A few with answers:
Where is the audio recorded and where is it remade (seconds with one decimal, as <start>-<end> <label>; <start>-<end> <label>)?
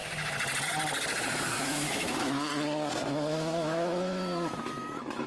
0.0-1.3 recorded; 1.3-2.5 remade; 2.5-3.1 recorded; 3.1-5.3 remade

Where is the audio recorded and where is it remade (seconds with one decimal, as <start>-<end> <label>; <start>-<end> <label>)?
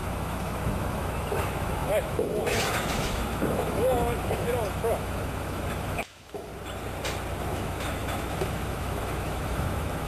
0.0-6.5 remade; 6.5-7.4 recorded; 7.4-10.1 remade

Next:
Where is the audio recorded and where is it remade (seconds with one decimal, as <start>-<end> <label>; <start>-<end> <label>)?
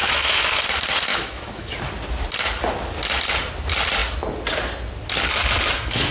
0.0-0.6 remade; 0.6-1.1 recorded; 1.1-1.7 remade; 1.7-6.1 recorded